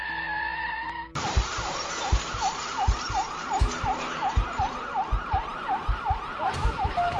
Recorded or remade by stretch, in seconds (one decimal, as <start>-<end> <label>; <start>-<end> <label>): 0.0-7.2 remade